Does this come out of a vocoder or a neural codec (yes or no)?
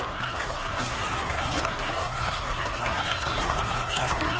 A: yes